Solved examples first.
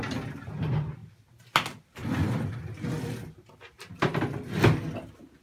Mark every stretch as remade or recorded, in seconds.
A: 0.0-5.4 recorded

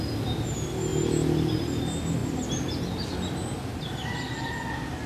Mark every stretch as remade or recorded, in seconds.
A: 0.0-5.1 recorded

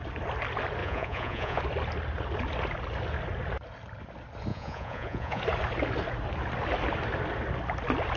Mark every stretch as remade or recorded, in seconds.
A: 0.0-0.8 recorded; 0.8-1.6 remade; 1.6-4.5 recorded; 4.5-5.4 remade; 5.4-8.2 recorded

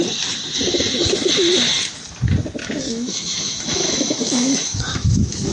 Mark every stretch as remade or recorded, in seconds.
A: 0.0-2.6 recorded; 2.6-5.5 remade

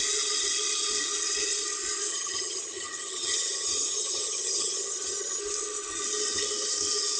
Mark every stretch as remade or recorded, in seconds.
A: 0.0-2.1 recorded; 2.1-5.4 remade; 5.4-7.2 recorded